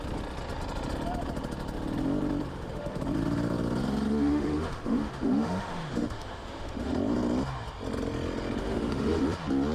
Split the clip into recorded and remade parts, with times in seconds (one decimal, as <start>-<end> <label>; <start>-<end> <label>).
0.0-2.5 recorded; 2.5-3.0 remade; 3.0-4.3 recorded; 4.3-6.9 remade; 6.9-8.6 recorded; 8.6-9.2 remade; 9.2-9.7 recorded